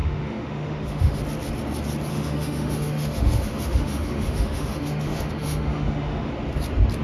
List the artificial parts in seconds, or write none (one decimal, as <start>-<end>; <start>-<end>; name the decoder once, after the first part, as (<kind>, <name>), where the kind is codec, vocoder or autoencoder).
0.0-1.2 (autoencoder, DAC-VAE); 2.1-6.3